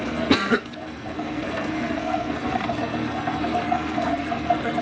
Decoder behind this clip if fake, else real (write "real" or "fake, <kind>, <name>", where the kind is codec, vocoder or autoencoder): fake, codec, SNAC